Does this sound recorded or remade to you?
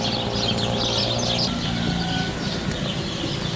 recorded